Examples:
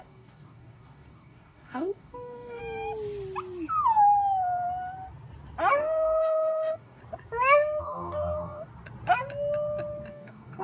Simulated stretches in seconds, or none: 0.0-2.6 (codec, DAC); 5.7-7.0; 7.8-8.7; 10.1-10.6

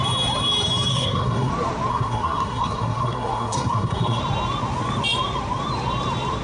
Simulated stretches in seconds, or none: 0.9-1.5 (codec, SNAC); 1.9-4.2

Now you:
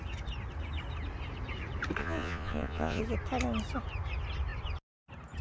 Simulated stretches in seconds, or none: 2.0-3.0 (vocoder, Vocos)